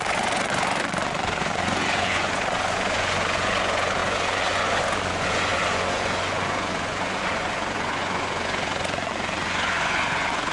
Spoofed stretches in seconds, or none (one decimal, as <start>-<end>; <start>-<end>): 0.0-10.5